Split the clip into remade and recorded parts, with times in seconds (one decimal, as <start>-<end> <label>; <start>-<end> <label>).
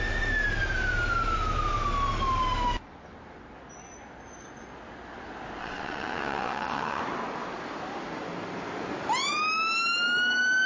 0.0-5.6 recorded; 5.6-7.0 remade; 7.0-10.7 recorded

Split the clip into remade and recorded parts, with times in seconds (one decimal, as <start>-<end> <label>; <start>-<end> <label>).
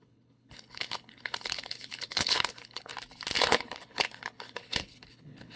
0.0-2.9 remade; 2.9-3.5 recorded; 3.5-5.6 remade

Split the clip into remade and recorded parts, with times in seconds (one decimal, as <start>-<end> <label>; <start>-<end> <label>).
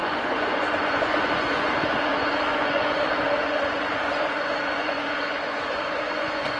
0.0-6.6 remade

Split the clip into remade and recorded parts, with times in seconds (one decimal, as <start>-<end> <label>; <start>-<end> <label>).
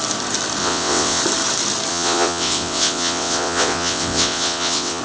0.0-0.6 recorded; 0.6-1.2 remade; 1.2-1.9 recorded; 1.9-5.0 remade